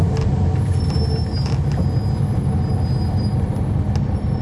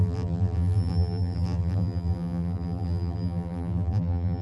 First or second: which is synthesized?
second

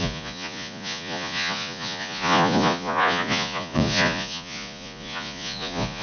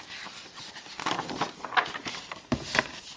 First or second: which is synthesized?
first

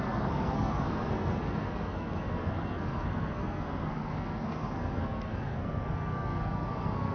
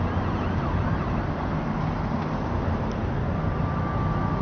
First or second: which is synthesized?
first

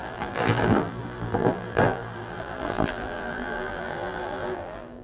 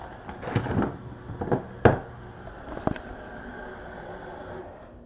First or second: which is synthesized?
first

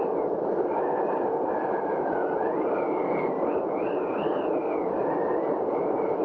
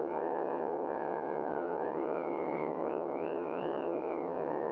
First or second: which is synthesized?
second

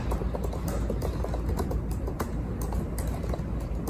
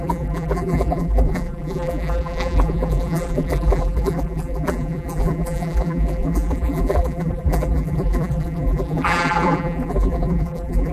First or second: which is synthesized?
second